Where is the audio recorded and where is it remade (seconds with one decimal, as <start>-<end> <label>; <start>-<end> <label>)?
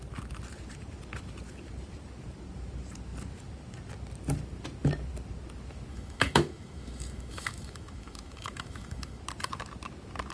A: 0.0-5.9 recorded; 5.9-9.2 remade; 9.2-10.3 recorded